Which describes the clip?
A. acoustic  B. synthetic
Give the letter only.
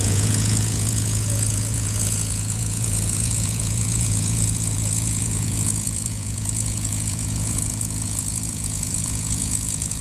B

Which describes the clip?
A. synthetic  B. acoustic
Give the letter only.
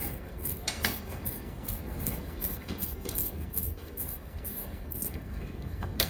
A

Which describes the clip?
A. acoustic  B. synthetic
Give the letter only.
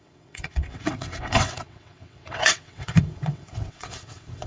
B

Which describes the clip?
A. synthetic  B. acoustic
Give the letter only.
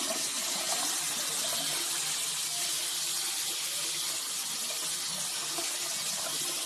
B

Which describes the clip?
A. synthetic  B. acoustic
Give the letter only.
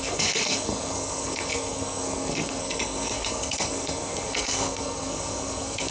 A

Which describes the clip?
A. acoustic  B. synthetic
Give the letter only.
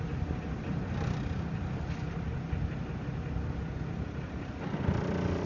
A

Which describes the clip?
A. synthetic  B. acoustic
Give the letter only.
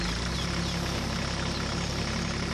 B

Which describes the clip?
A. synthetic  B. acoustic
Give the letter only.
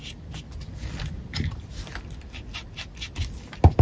B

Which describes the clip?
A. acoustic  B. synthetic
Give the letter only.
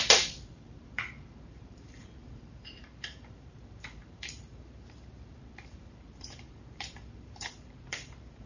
B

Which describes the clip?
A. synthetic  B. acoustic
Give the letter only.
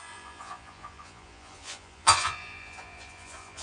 A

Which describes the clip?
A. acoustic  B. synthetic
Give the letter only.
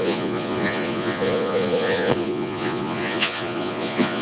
B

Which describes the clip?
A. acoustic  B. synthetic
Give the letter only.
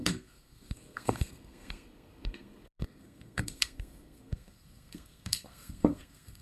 B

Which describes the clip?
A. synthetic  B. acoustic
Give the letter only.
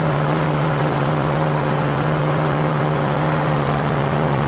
A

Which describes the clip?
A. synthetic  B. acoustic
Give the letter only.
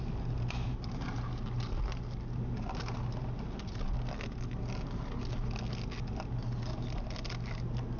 B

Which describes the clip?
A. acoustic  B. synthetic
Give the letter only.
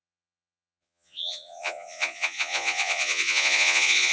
B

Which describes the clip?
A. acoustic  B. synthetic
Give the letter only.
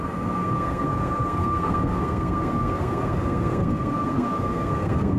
B